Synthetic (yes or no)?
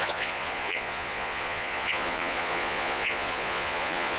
yes